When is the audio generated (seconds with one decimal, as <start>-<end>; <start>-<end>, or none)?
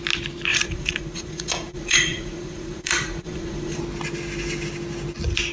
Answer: 0.5-3.8